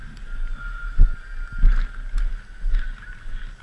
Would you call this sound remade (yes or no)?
no